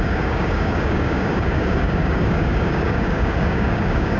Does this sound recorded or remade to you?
remade